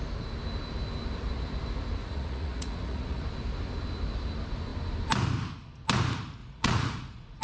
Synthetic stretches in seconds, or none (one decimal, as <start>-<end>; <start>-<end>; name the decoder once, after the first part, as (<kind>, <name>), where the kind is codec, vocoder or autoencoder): 2.0-3.2 (vocoder, Vocos); 6.4-7.4